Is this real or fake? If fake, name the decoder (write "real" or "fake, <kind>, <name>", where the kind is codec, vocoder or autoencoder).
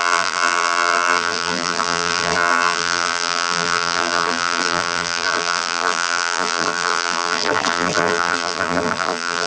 fake, vocoder, BigVGAN v2